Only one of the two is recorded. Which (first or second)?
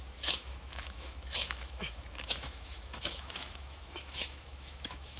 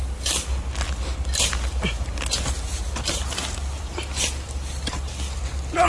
second